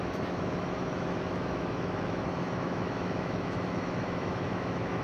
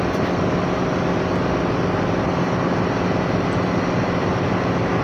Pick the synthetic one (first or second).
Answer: first